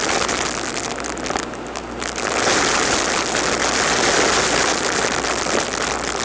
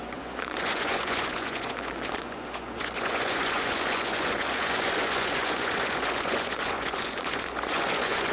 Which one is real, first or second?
first